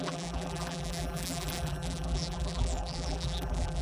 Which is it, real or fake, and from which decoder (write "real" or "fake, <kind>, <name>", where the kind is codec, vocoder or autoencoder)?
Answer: fake, vocoder, BigVGAN v2